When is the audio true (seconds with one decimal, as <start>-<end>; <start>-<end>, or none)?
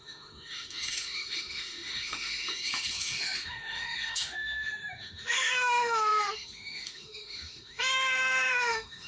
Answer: none